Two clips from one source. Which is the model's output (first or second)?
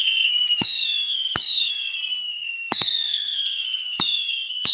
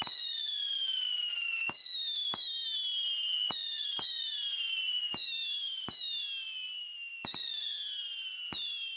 first